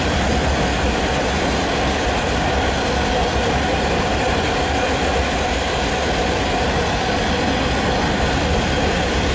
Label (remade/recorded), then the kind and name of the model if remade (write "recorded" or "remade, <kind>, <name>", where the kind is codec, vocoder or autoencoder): recorded